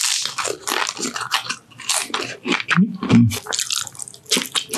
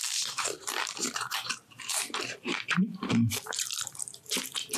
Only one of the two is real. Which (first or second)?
first